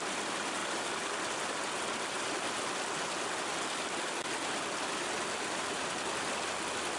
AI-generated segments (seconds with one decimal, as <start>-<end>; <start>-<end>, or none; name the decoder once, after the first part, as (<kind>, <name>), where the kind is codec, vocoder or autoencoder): none